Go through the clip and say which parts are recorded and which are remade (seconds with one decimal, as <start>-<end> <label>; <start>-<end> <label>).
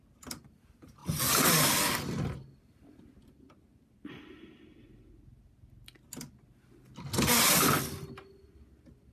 0.0-9.1 recorded